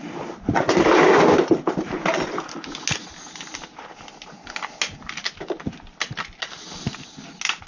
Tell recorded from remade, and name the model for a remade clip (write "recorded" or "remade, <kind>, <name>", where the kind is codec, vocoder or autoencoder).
recorded